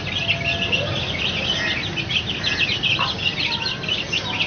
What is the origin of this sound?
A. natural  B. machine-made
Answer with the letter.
A